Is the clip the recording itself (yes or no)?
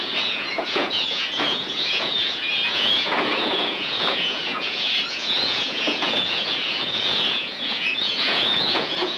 no